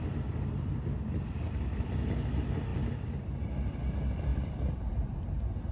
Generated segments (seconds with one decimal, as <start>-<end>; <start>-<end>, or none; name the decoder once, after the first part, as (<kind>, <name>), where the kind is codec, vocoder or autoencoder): 4.3-5.0 (vocoder, BigVGAN v2)